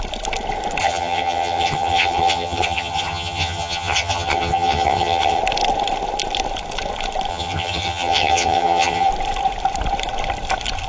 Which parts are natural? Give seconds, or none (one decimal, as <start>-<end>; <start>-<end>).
0.0-0.8; 5.4-7.3; 9.1-10.9